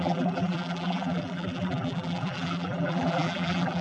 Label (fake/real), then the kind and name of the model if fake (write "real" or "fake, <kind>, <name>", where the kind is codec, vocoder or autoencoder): fake, vocoder, BigVGAN v2